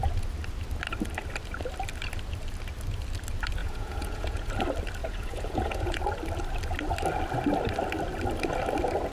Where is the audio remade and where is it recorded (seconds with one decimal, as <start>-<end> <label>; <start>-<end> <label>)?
0.0-3.6 recorded; 3.6-4.5 remade; 4.5-5.0 recorded; 5.0-6.0 remade; 6.0-9.1 recorded